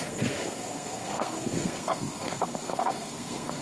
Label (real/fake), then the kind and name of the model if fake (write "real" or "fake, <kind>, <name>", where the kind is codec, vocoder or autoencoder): fake, codec, SNAC